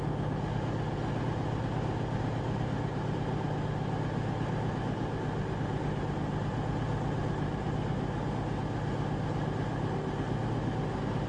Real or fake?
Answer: real